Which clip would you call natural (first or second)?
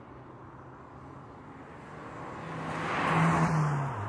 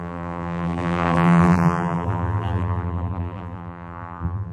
first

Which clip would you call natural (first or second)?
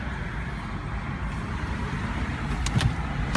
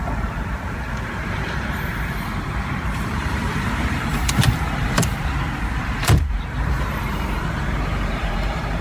first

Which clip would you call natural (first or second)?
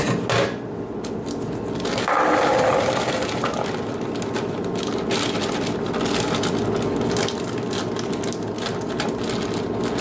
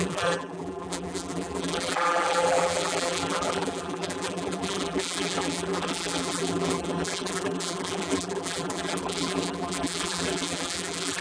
first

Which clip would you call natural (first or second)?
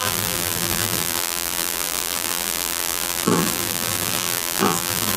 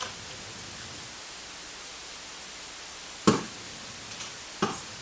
second